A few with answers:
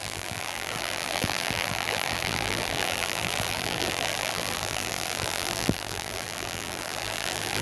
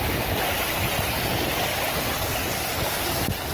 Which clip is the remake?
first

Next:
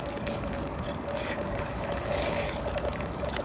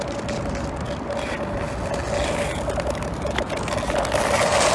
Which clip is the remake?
first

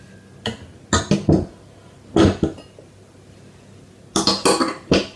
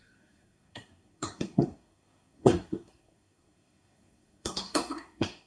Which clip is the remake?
second